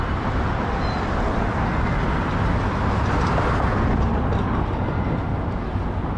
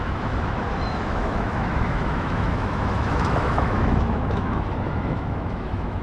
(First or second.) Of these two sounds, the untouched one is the first